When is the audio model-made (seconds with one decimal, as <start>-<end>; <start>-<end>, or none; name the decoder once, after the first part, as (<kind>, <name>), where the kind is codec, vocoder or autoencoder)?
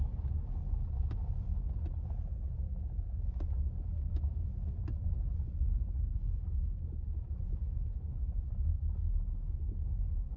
5.7-7.5 (vocoder, BigVGAN v2)